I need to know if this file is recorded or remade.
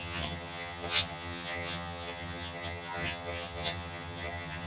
remade